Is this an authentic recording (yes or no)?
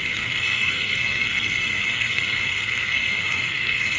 no